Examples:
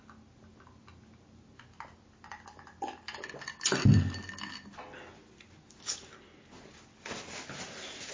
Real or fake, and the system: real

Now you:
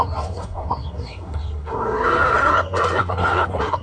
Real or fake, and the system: fake, codec, SNAC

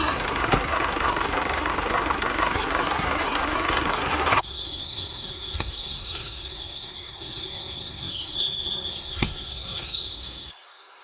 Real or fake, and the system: fake, codec, SNAC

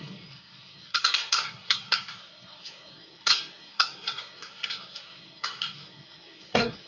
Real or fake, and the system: fake, codec, SNAC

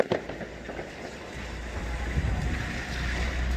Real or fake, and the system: real